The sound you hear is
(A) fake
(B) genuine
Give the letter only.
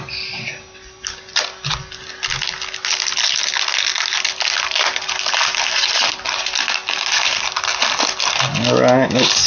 B